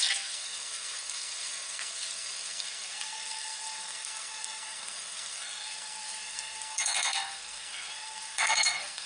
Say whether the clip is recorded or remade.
remade